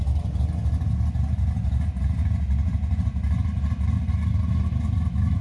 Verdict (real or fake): real